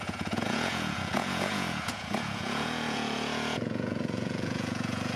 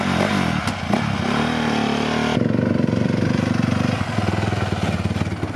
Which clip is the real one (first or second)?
second